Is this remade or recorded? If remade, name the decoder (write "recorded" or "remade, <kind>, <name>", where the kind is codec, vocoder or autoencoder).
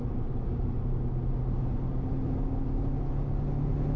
recorded